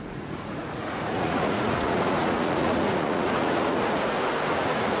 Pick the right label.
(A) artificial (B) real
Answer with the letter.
A